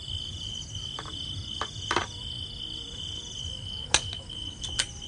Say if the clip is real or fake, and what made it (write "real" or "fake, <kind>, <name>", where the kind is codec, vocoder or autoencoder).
real